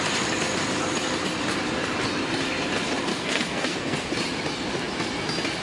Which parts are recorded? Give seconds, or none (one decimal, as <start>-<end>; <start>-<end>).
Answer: 0.0-3.1; 4.1-5.6